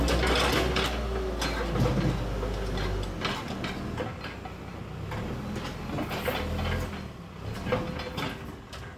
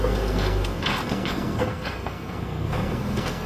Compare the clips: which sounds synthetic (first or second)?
second